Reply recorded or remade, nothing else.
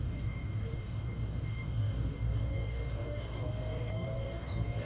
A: remade